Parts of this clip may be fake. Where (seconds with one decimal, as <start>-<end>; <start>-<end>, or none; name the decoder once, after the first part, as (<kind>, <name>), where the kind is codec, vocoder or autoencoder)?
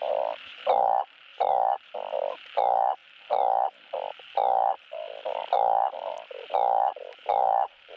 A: 1.3-1.9 (vocoder, BigVGAN v2)